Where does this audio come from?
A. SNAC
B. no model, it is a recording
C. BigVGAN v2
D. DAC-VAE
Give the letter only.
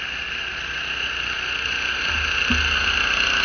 B